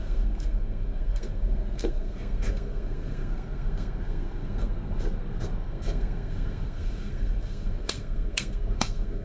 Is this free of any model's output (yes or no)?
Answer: no